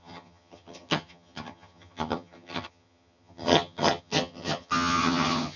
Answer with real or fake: fake